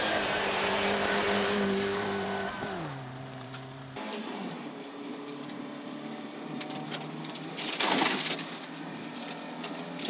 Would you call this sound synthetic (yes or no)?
yes